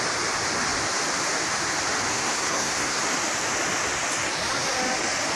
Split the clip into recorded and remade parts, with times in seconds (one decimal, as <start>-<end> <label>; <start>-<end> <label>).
0.0-2.1 recorded; 2.1-3.0 remade; 3.0-5.4 recorded